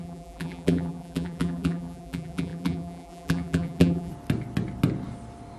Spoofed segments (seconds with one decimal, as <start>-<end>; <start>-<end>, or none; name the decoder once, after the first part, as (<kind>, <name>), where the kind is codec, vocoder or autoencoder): 0.0-4.1 (vocoder, BigVGAN v2)